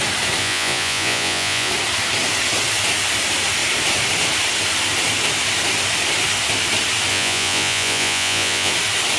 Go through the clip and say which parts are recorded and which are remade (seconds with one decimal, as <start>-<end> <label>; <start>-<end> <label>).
0.0-0.4 recorded; 0.4-1.7 remade; 1.7-7.1 recorded; 7.1-8.7 remade; 8.7-9.2 recorded